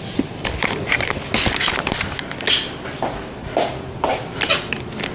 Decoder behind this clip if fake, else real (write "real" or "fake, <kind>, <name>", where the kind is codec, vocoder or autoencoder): real